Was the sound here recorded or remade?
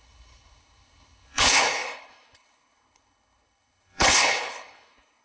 remade